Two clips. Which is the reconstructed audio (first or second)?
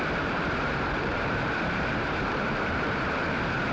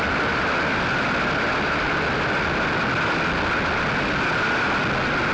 first